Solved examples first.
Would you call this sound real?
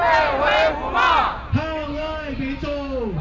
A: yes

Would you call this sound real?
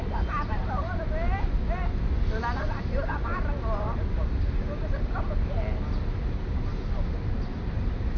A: yes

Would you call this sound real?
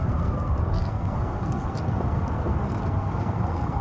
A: no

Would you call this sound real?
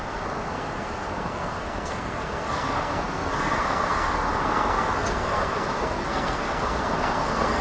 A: no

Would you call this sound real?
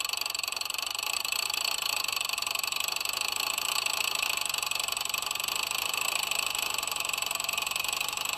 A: yes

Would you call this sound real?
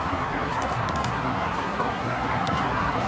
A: no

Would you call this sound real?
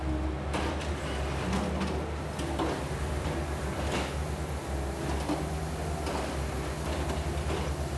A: yes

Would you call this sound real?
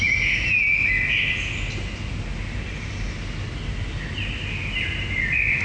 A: yes